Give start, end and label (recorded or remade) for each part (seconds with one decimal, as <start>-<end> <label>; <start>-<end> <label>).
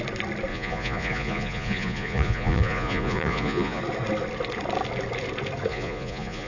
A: 0.0-0.5 recorded; 0.5-3.8 remade; 3.8-5.7 recorded; 5.7-6.5 remade